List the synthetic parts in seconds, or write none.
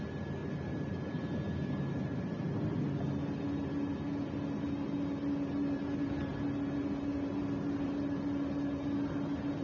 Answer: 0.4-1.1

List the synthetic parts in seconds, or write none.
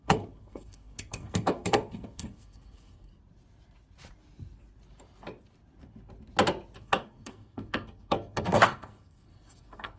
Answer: 0.0-3.1; 6.8-10.0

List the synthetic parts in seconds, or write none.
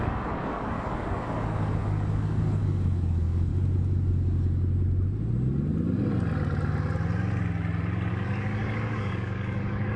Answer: 0.0-3.5; 8.1-10.0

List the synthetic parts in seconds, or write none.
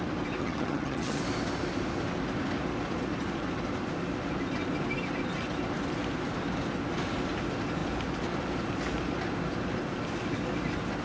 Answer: 0.4-1.2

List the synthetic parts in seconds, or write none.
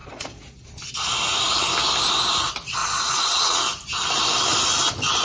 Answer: 0.0-0.9; 2.8-3.6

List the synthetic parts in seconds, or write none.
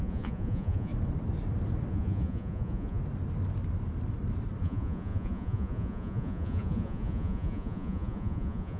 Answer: 0.0-0.9; 1.9-3.0; 4.6-8.8